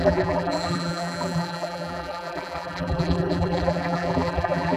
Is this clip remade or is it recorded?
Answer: remade